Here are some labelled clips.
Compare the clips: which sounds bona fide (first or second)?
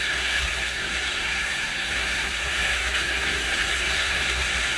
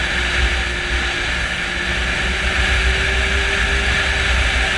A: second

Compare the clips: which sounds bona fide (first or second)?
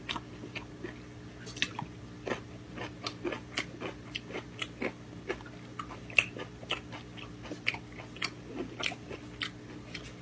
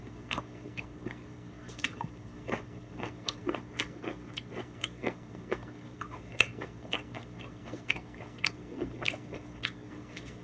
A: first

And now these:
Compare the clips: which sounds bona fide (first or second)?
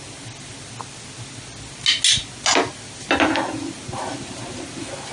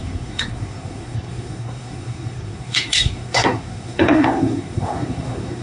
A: first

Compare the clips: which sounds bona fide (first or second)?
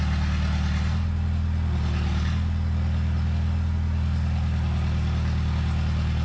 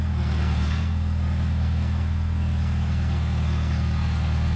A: first